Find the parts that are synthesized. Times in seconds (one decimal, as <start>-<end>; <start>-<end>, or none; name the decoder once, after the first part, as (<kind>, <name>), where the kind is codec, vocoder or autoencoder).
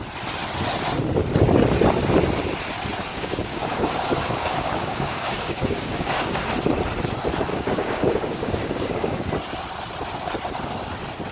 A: 3.1-6.5 (codec, DAC); 7.5-9.3